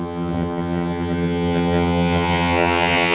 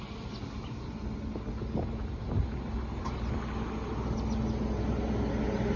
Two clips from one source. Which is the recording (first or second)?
second